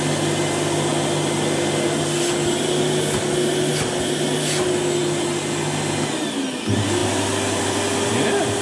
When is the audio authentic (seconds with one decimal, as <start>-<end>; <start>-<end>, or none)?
0.0-8.6